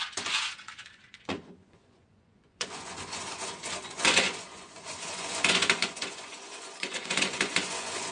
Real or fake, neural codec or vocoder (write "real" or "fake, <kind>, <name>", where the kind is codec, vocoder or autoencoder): fake, vocoder, Vocos